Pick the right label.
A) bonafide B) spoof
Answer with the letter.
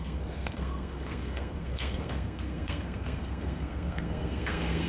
B